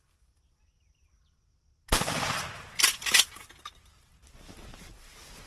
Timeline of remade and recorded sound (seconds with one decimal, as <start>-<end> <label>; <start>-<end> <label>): 0.0-5.5 recorded